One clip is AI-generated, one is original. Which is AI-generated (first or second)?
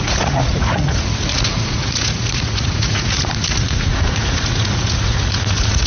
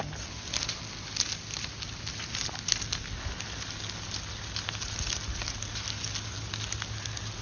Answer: first